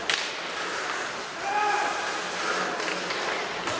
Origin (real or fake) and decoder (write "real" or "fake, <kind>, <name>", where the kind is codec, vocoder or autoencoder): real